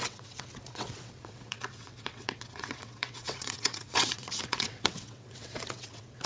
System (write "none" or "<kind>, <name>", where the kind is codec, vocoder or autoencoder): vocoder, WaveNeXt